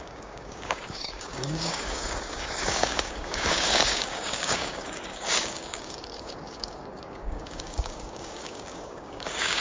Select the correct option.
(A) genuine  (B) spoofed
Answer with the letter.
B